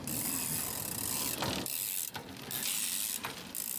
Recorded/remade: recorded